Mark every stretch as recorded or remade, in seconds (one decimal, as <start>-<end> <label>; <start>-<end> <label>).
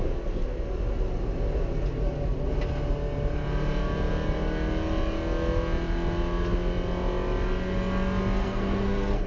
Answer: 0.0-8.4 recorded; 8.4-9.3 remade